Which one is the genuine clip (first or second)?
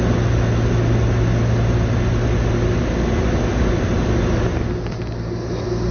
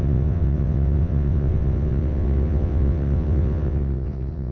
first